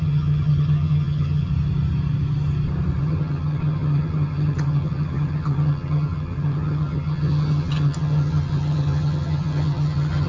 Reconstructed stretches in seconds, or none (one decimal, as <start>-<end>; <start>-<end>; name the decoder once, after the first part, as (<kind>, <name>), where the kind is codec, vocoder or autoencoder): 0.0-1.5 (vocoder, HiFi-GAN); 3.0-10.3